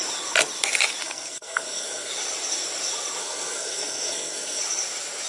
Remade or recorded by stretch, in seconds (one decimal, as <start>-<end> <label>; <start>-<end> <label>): 0.0-1.0 recorded; 1.0-2.1 remade; 2.1-3.2 recorded; 3.2-4.6 remade; 4.6-5.3 recorded

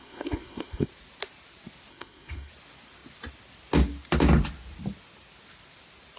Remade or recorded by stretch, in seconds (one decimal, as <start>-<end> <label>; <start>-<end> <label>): 0.0-0.9 remade; 0.9-1.9 recorded; 1.9-2.5 remade; 2.5-6.2 recorded

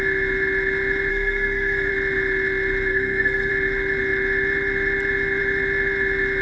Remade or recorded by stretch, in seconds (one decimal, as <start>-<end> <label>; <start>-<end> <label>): 0.0-1.1 recorded; 1.1-1.9 remade; 1.9-2.9 recorded; 2.9-3.5 remade; 3.5-6.4 recorded

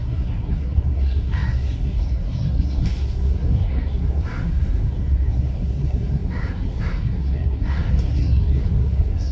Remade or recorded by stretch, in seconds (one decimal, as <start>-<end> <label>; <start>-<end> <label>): 0.0-9.3 remade

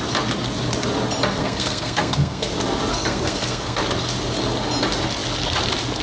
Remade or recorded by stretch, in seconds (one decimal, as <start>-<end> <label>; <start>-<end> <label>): 0.0-1.4 recorded; 1.4-2.5 remade; 2.5-2.9 recorded; 2.9-3.8 remade; 3.8-6.0 recorded

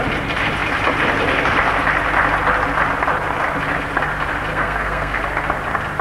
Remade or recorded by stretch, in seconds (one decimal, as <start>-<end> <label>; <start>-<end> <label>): 0.0-4.5 recorded; 4.5-5.2 remade; 5.2-6.0 recorded